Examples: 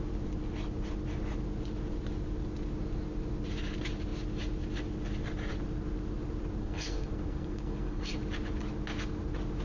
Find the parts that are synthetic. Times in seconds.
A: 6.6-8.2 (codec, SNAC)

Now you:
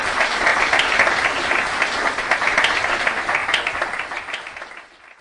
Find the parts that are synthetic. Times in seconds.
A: none

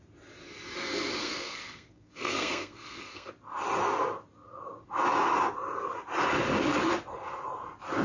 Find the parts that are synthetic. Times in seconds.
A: 1.2-3.3 (codec, SNAC)

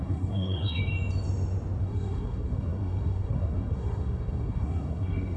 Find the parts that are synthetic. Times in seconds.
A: 0.0-0.8 (codec, SNAC); 1.8-5.4

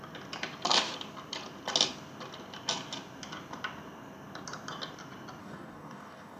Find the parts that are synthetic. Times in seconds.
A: 5.4-6.4 (codec, DAC)

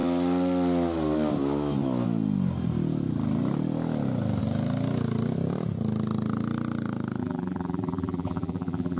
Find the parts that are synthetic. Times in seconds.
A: 7.2-9.0 (vocoder, BigVGAN v2)